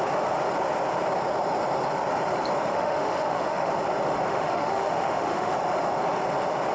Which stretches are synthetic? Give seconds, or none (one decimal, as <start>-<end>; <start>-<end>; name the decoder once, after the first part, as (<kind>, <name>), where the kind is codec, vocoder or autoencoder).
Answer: 2.7-3.7 (autoencoder, DAC-VAE); 4.3-5.5